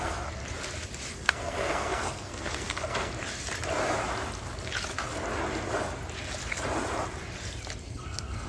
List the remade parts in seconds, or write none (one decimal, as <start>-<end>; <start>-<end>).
0.0-0.4; 1.1-3.1; 7.8-8.5